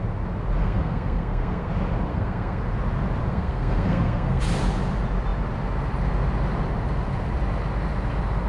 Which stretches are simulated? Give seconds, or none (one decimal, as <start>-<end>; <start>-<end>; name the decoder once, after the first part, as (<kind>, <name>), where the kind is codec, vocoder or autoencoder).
0.6-1.7 (codec, SNAC); 2.1-2.6; 3.3-4.4